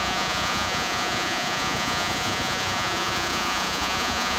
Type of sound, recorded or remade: remade